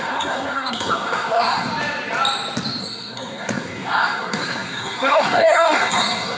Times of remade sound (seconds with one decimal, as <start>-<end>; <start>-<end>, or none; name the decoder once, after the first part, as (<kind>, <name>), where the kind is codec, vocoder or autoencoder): 0.0-1.7 (codec, SNAC); 2.8-6.4